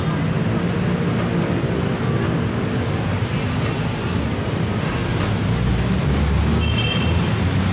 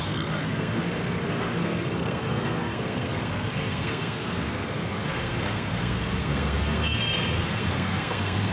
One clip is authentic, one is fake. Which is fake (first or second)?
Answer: second